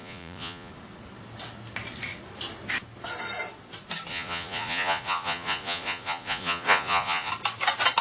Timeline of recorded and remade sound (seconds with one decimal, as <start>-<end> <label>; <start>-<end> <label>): 0.0-0.7 remade; 0.7-4.1 recorded; 4.1-7.3 remade; 7.3-8.0 recorded